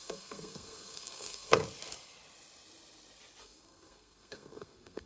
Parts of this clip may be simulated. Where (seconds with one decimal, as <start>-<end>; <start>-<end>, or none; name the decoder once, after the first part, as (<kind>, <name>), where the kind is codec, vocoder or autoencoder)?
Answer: 0.0-1.6 (codec, SNAC); 3.4-5.1